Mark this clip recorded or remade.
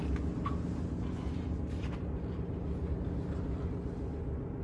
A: recorded